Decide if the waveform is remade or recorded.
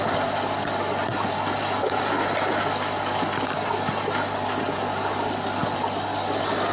recorded